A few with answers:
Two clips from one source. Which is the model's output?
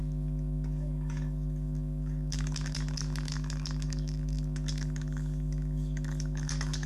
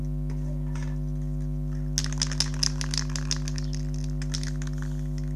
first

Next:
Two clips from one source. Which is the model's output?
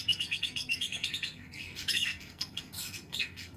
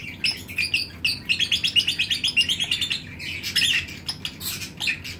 first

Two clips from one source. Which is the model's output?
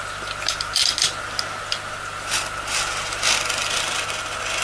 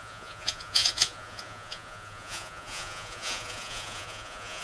second